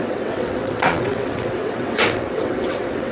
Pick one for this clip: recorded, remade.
remade